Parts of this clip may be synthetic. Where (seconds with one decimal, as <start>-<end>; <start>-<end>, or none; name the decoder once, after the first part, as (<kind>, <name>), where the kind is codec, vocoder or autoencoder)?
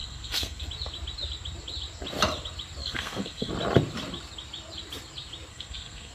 0.0-0.7 (codec, SNAC); 2.8-3.5; 5.5-6.1